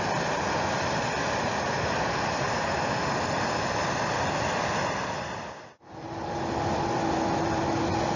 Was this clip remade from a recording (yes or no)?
no